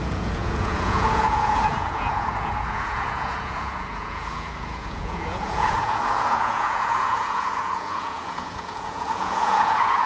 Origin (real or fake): fake